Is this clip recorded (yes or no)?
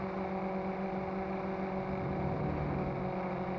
yes